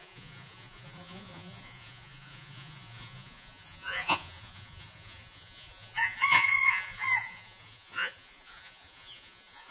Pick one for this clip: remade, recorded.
remade